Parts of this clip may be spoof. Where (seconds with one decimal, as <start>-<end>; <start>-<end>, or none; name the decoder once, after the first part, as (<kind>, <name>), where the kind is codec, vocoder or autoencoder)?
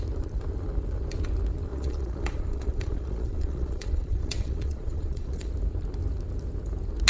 1.7-5.5 (vocoder, Vocos)